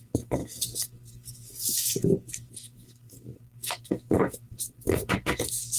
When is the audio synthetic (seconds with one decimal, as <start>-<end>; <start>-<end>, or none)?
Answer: 0.0-5.8